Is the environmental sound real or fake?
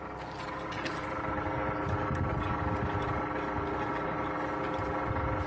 real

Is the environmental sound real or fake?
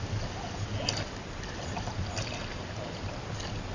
real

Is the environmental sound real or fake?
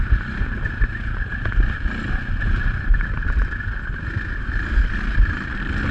real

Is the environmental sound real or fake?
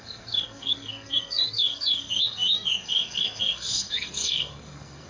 fake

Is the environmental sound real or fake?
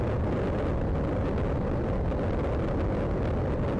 real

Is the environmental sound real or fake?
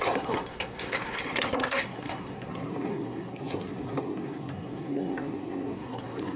fake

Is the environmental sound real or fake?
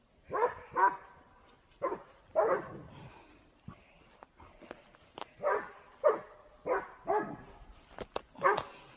real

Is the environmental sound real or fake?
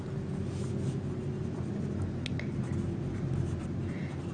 real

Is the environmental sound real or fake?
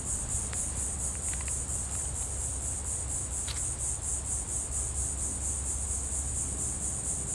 real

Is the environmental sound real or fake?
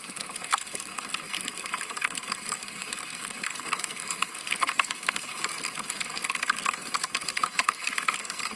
fake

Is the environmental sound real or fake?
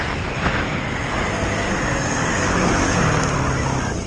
real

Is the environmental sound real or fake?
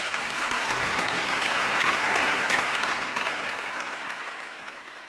fake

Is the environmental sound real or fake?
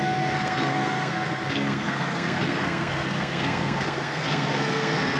fake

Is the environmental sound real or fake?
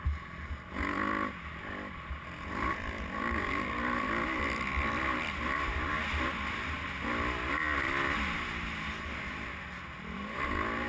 real